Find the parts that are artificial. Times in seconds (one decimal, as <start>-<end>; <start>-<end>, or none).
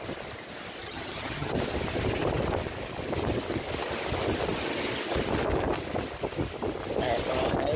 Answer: 0.8-1.5